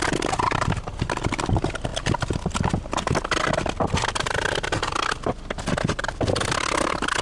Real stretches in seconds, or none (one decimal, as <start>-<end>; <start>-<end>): 0.0-7.2